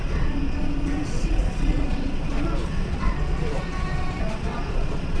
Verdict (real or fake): fake